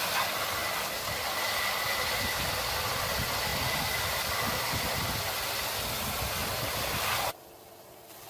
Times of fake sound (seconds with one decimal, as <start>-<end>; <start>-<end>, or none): 3.5-5.3; 6.4-7.3